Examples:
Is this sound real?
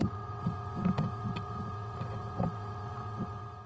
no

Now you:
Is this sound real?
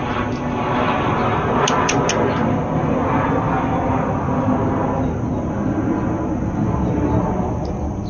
yes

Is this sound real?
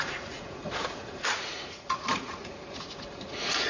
no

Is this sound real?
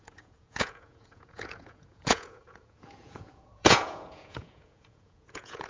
no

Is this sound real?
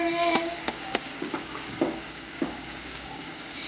no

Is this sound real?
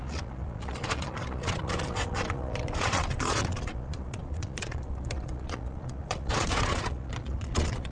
no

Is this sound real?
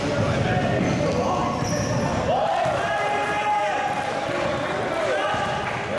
yes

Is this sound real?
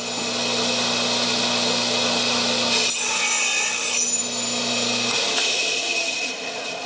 yes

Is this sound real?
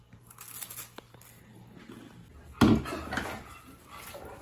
yes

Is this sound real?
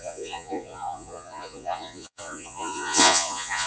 no